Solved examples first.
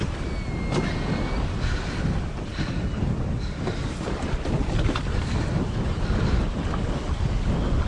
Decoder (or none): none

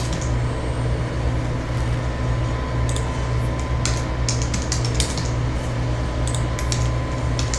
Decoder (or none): none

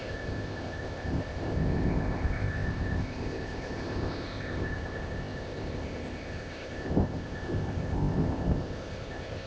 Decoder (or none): codec, ZipCodec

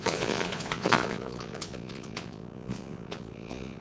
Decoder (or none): vocoder, Vocos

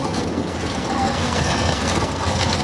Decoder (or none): codec, SNAC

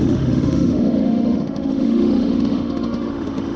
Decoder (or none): autoencoder, DAC-VAE